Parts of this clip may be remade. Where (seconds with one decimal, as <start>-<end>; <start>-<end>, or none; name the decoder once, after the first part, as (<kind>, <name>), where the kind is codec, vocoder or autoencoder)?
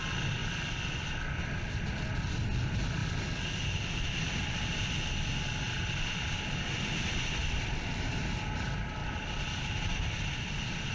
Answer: none